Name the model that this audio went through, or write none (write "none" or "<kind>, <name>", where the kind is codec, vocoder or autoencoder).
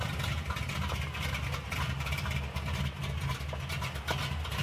none